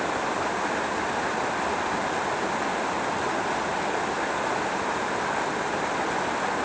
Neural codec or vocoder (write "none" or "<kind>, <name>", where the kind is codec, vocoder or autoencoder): none